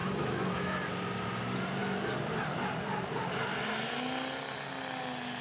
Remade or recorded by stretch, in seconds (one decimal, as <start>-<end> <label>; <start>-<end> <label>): 0.0-0.7 remade; 0.7-5.4 recorded